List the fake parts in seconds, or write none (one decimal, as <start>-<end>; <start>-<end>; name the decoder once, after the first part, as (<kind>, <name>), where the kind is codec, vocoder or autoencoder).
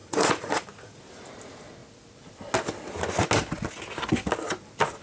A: 0.0-1.0 (vocoder, Vocos)